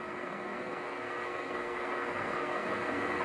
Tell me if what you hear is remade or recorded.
remade